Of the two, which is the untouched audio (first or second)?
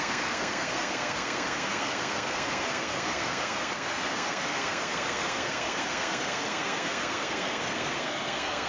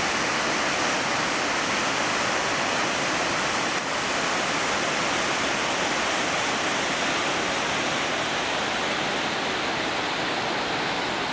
second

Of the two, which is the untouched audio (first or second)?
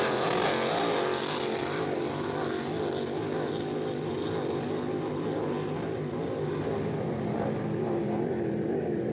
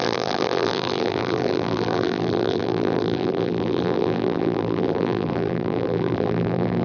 first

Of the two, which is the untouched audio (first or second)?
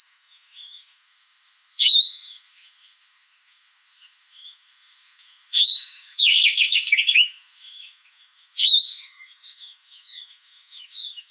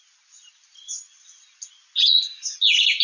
second